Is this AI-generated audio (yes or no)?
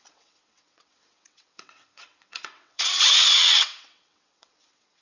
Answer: yes